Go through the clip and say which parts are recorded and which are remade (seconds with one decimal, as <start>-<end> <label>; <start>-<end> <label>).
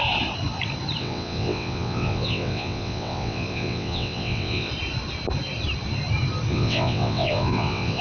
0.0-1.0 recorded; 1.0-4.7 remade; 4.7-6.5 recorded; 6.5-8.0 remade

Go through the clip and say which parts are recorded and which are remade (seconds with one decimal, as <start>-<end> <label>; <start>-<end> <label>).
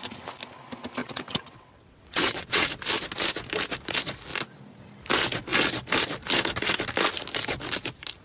0.0-1.0 recorded; 1.0-2.7 remade; 2.7-8.2 recorded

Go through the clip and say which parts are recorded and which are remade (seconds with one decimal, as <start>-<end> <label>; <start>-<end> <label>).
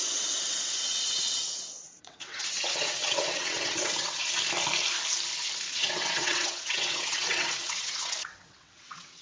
0.0-4.2 remade; 4.2-5.7 recorded; 5.7-9.2 remade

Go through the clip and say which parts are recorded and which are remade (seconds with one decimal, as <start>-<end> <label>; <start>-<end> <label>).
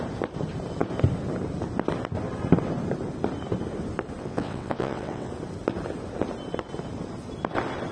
0.0-4.2 recorded; 4.2-5.3 remade; 5.3-7.9 recorded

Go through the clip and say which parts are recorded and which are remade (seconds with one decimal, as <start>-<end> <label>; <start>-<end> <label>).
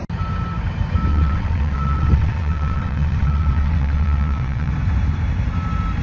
0.0-1.1 recorded; 1.1-4.7 remade; 4.7-6.0 recorded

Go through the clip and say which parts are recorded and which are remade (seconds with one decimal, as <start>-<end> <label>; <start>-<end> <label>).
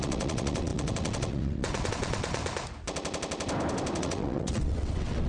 0.0-2.4 remade; 2.4-4.0 recorded; 4.0-5.3 remade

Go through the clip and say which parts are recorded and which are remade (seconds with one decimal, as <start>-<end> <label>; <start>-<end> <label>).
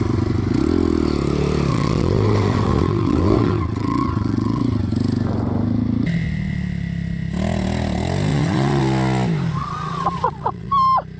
0.0-1.7 recorded; 1.7-4.6 remade; 4.6-8.3 recorded; 8.3-8.8 remade; 8.8-9.6 recorded; 9.6-10.7 remade; 10.7-11.2 recorded